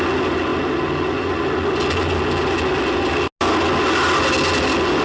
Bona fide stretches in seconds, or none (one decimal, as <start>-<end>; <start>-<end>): 0.0-5.0